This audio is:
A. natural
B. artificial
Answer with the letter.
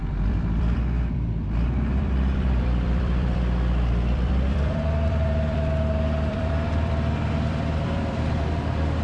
B